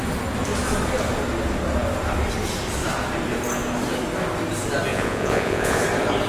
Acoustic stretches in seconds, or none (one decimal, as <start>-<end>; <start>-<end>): 0.0-4.9; 5.8-6.3

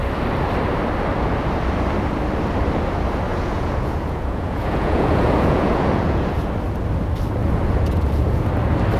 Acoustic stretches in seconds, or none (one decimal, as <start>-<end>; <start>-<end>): 0.0-3.3; 6.5-7.4; 8.5-9.0

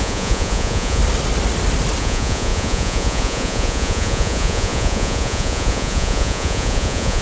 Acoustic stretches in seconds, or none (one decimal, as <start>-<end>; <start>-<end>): 1.0-2.0

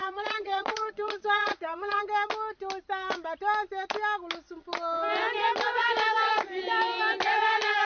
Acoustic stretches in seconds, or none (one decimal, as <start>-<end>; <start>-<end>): 2.0-7.8

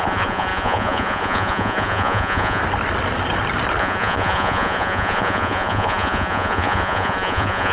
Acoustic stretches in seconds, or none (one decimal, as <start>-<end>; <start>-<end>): 2.6-3.8

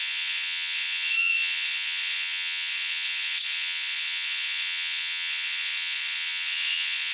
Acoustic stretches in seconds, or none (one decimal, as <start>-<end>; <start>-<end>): none

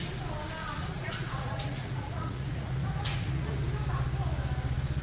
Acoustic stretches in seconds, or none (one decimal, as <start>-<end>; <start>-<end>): 0.0-0.6; 3.6-5.0